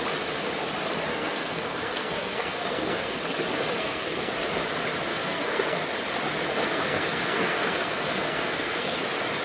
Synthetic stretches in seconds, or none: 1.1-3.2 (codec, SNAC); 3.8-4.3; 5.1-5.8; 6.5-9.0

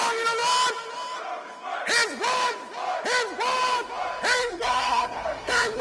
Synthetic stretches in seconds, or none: 4.4-5.8 (codec, SNAC)

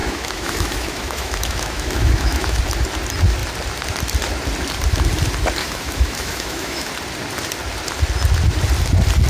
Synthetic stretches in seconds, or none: 0.0-2.6 (autoencoder, DAC-VAE); 5.6-6.9